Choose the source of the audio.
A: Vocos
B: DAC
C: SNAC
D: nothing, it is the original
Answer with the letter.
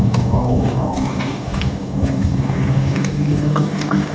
B